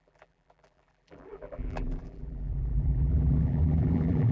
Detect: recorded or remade remade